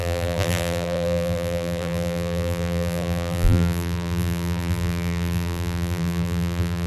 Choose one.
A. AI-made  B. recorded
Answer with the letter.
A